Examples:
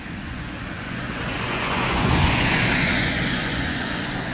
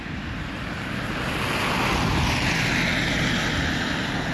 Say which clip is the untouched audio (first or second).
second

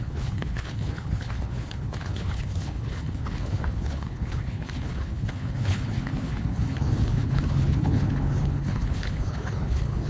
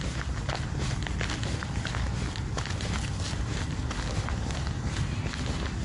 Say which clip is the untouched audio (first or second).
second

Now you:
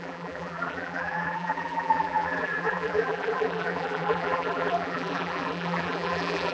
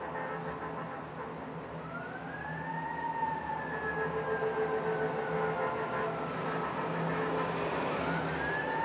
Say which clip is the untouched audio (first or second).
second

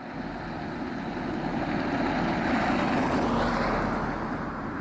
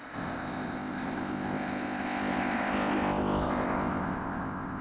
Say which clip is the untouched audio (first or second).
first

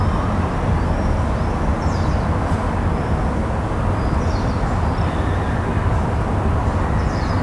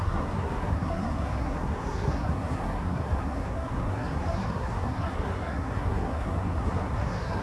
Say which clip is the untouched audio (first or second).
first